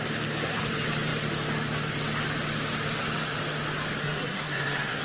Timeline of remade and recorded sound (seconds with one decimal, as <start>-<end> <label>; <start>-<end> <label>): 0.0-4.0 recorded; 4.0-5.0 remade